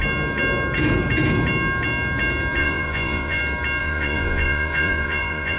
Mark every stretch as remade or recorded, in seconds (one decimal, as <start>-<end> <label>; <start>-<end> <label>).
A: 0.0-2.6 recorded; 2.6-3.4 remade; 3.4-3.8 recorded; 3.8-5.6 remade